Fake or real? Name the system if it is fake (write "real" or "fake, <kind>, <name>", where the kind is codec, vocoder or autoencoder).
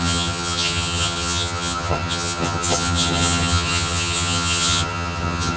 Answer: fake, vocoder, HiFi-GAN